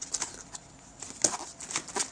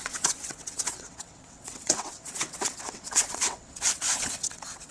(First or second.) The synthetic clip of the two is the second